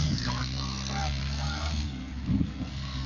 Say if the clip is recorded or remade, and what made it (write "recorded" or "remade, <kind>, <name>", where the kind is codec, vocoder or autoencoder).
remade, codec, SNAC